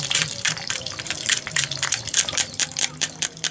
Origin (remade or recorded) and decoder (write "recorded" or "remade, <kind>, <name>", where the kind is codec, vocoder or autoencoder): remade, vocoder, BigVGAN v2